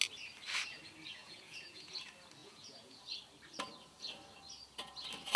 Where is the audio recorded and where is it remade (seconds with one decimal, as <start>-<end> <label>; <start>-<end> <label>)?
0.0-1.2 recorded; 1.2-1.9 remade; 1.9-2.4 recorded; 2.4-3.0 remade; 3.0-5.4 recorded